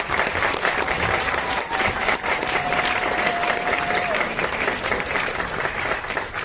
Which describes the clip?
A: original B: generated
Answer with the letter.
B